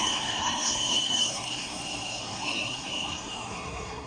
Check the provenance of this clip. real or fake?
fake